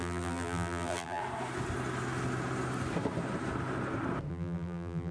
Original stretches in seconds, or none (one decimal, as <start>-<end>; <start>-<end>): 1.2-4.3